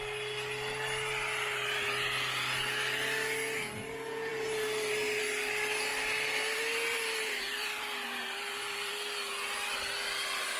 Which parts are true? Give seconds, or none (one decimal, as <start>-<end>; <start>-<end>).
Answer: 0.0-5.9; 8.9-10.6